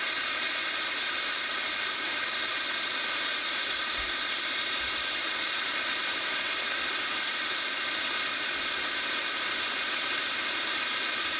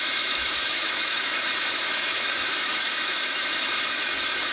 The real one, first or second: first